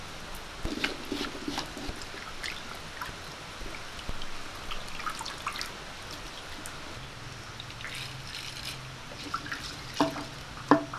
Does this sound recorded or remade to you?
recorded